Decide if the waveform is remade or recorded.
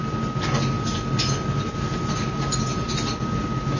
recorded